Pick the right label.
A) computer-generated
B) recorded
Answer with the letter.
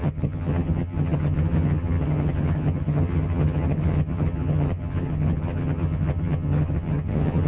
A